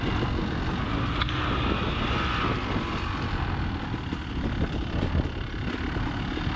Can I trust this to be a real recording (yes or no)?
yes